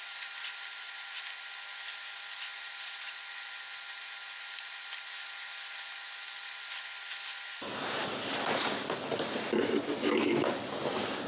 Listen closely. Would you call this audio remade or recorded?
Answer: recorded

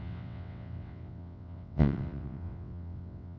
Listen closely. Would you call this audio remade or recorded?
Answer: remade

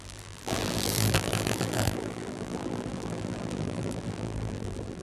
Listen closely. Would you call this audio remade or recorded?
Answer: remade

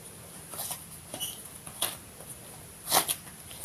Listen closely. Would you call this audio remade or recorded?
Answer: recorded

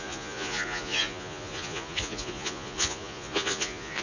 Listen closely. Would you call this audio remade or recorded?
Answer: remade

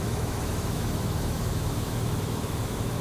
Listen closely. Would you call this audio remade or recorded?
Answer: remade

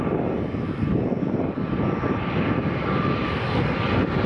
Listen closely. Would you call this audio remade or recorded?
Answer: remade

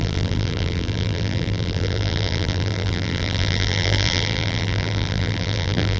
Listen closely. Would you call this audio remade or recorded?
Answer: remade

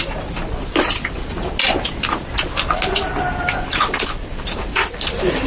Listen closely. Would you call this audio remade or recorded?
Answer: recorded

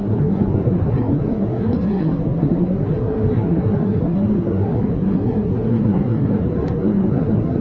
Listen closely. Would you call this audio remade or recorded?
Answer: remade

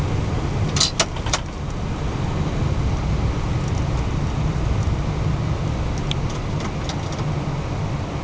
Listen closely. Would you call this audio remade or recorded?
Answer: recorded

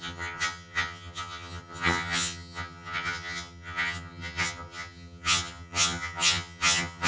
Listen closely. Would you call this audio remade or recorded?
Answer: remade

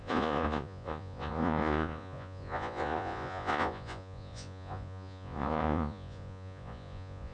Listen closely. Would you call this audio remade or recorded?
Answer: remade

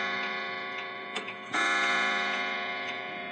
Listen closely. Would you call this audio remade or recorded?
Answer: remade